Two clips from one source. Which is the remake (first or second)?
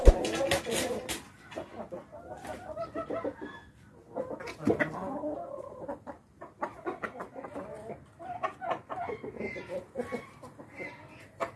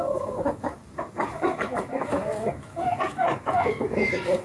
second